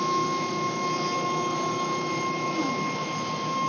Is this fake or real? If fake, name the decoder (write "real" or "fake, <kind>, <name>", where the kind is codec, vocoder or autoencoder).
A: fake, autoencoder, DAC-VAE